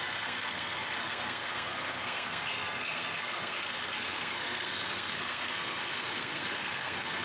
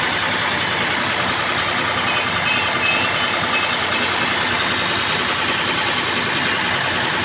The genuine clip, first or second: second